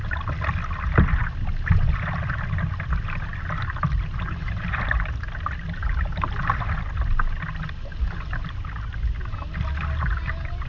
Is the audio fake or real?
real